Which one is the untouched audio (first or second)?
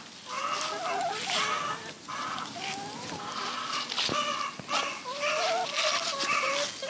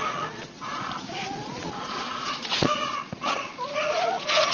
first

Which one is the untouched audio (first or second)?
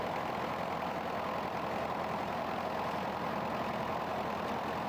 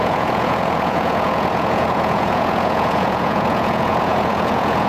first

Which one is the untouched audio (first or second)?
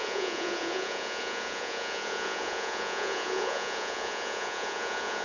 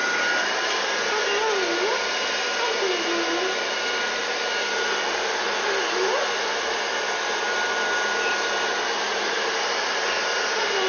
second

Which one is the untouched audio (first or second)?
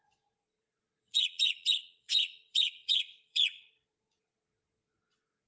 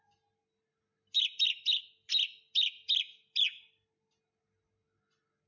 second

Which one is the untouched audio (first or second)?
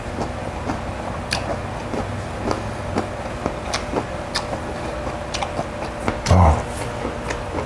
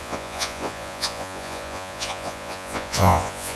first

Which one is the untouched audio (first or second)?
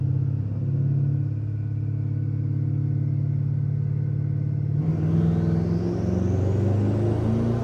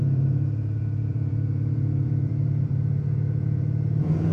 first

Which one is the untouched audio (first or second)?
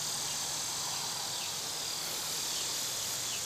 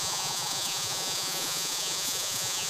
first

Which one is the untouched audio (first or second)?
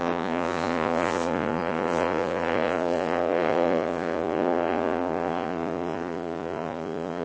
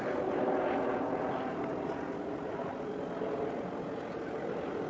second